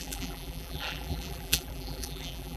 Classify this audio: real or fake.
fake